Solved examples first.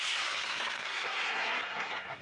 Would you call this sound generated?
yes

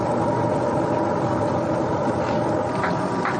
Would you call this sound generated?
no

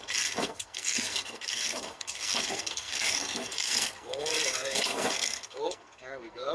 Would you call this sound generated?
yes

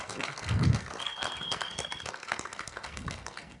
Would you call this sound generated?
yes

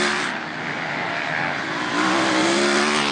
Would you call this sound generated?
no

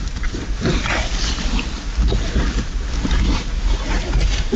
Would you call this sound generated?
no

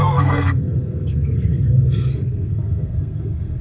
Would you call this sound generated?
yes